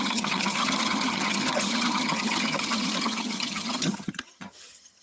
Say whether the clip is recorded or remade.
remade